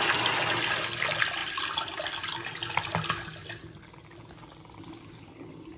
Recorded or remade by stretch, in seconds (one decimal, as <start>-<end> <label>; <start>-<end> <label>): 0.0-5.8 recorded